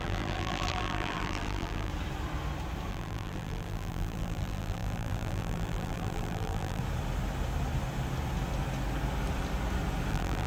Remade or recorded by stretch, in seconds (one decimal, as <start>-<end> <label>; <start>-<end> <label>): 0.0-1.9 remade; 1.9-2.9 recorded; 2.9-6.8 remade; 6.8-10.1 recorded; 10.1-10.5 remade